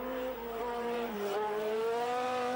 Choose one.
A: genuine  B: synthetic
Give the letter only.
B